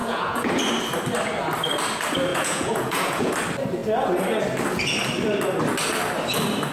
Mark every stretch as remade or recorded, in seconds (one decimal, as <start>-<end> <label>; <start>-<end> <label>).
0.0-0.5 remade; 0.5-2.3 recorded; 2.3-3.3 remade; 3.3-6.7 recorded